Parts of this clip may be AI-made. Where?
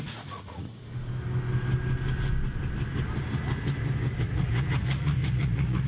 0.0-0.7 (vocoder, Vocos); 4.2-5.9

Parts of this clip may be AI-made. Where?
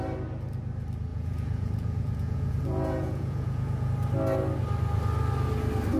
1.1-3.9 (vocoder, Vocos)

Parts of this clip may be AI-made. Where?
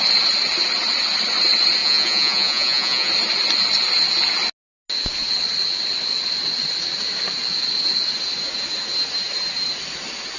1.8-3.1 (vocoder, Vocos)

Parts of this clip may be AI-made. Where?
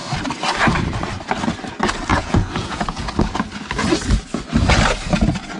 2.1-3.1 (vocoder, Vocos)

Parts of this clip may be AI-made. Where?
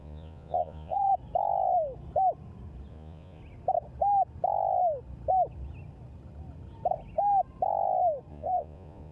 0.0-1.1 (vocoder, Vocos); 2.9-3.4; 8.3-9.1